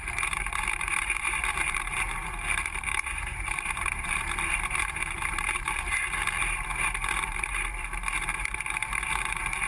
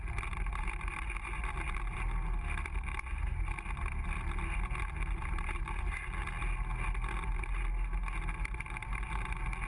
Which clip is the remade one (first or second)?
first